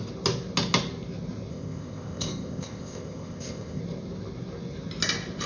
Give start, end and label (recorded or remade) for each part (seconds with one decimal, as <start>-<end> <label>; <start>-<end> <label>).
0.0-1.5 recorded; 1.5-3.8 remade; 3.8-5.5 recorded